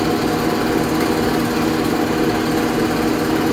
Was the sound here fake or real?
real